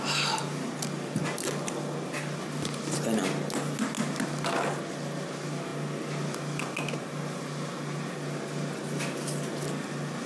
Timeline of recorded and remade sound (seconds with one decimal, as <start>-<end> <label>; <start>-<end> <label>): 0.0-10.3 recorded